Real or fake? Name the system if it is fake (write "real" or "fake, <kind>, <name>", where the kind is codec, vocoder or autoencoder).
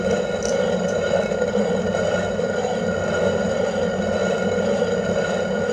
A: real